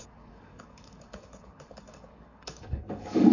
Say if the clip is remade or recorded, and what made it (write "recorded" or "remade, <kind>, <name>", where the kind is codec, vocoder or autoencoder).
remade, codec, DAC